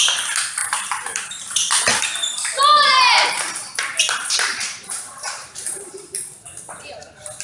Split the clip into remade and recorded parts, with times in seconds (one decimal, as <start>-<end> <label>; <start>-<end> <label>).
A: 0.0-0.6 recorded; 0.6-2.0 remade; 2.0-2.9 recorded; 2.9-5.9 remade; 5.9-7.4 recorded